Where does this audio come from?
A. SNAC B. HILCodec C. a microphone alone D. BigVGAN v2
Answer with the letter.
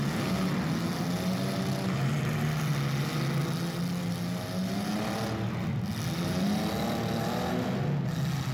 C